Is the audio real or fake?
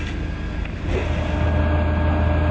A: real